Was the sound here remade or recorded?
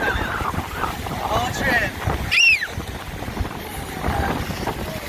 recorded